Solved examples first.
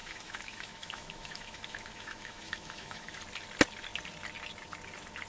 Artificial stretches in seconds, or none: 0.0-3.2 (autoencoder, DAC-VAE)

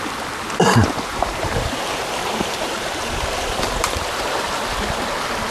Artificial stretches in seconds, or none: 1.1-4.4 (vocoder, BigVGAN v2)

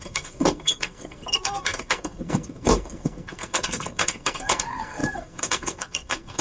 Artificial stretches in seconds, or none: 0.0-6.4 (codec, SNAC)

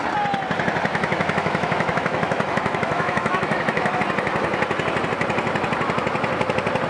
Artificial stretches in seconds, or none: 0.9-4.0 (autoencoder, DAC-VAE)

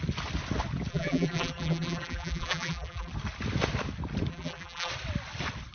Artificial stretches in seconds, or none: 0.9-3.1 (vocoder, BigVGAN v2); 4.3-4.9

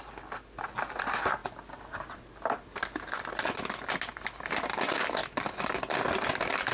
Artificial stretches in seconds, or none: none

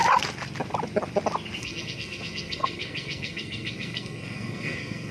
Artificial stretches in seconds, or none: 1.6-5.1 (codec, SNAC)